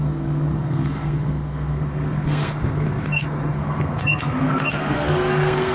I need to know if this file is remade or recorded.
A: remade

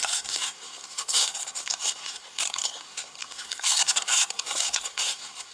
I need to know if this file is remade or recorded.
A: remade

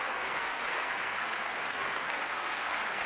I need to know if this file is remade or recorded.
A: remade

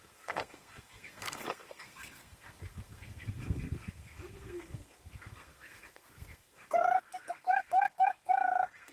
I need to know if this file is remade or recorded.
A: remade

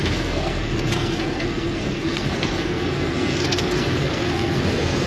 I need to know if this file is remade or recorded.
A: remade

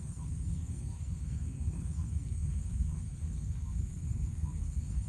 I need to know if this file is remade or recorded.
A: remade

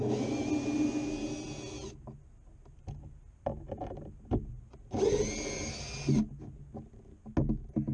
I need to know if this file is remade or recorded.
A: recorded